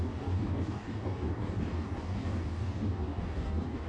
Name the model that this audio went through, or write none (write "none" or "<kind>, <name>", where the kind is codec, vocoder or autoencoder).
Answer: codec, DAC